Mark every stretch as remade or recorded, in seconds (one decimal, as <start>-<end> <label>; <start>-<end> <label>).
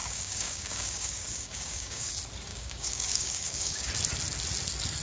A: 0.0-2.1 remade; 2.1-2.5 recorded; 2.5-3.9 remade; 3.9-5.0 recorded